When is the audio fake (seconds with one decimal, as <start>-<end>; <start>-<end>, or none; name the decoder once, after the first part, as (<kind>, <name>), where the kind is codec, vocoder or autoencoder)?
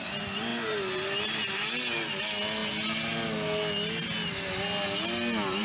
none